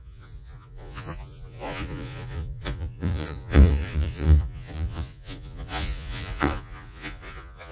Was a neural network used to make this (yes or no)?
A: yes